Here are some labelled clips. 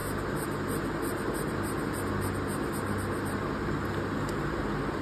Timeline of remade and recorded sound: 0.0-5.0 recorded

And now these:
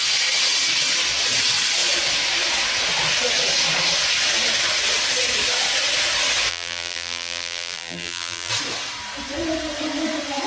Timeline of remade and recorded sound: 0.0-6.5 recorded; 6.5-8.5 remade; 8.5-10.5 recorded

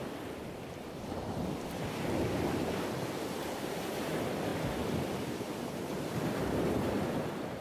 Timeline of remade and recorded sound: 0.0-4.5 remade; 4.5-5.4 recorded; 5.4-7.6 remade

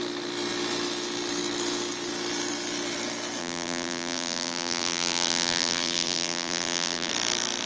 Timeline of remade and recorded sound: 0.0-3.4 recorded; 3.4-7.1 remade; 7.1-7.7 recorded

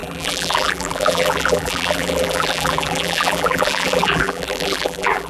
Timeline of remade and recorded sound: 0.0-5.3 remade